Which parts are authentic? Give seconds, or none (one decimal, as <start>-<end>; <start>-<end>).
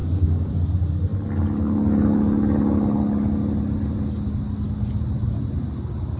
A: 0.5-6.2